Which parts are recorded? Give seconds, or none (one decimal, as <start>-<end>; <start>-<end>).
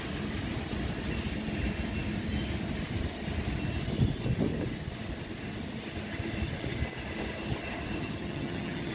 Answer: 0.0-8.0